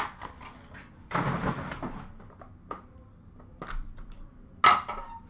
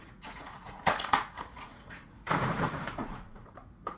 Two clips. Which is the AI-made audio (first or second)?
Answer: second